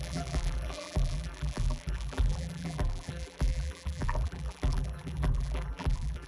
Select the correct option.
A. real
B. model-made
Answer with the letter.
B